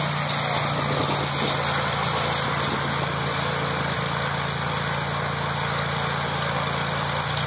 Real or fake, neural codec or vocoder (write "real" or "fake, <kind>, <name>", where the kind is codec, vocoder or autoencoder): real